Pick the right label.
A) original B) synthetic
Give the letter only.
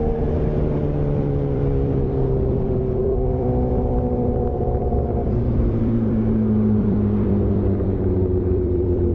B